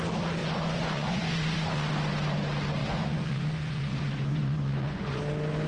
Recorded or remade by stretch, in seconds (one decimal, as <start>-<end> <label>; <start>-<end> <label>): 0.0-0.4 recorded; 0.4-1.9 remade; 1.9-2.8 recorded; 2.8-5.2 remade; 5.2-5.7 recorded